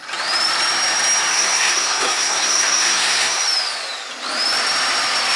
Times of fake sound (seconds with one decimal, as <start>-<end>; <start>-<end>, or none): 1.3-3.4